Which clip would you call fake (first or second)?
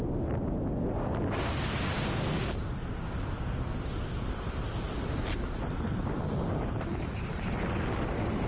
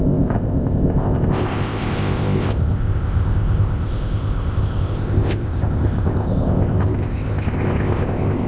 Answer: second